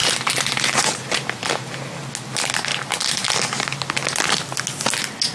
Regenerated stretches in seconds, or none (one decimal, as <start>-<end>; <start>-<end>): 0.0-0.6; 2.7-4.6